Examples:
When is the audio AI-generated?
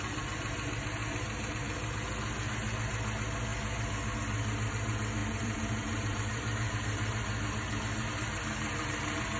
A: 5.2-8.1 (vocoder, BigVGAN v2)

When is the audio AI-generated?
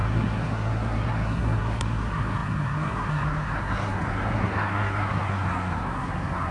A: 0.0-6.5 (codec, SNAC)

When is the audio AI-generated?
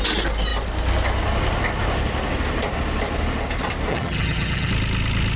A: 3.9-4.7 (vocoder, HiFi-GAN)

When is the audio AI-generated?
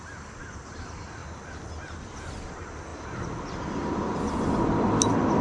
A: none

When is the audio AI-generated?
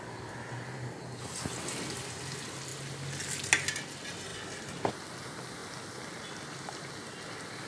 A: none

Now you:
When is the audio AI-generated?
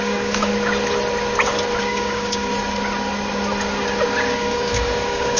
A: 0.0-0.5 (codec, DAC); 1.8-2.5; 4.3-5.4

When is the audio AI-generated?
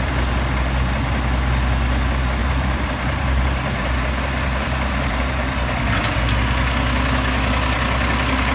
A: 2.4-5.7 (vocoder, BigVGAN v2)